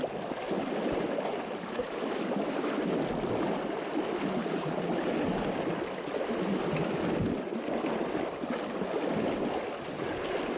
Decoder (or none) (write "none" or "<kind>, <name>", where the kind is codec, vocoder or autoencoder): none